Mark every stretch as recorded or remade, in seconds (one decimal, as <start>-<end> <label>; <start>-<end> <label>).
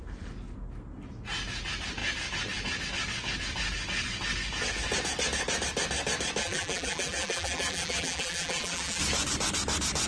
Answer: 0.0-6.4 recorded; 6.4-9.0 remade; 9.0-10.1 recorded